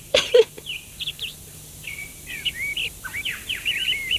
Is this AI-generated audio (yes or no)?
yes